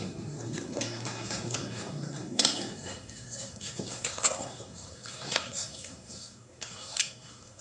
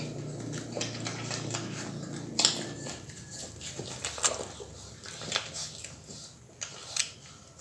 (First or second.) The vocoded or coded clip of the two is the first